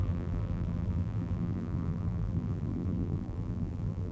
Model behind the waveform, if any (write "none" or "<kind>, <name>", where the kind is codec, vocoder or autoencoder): vocoder, BigVGAN v2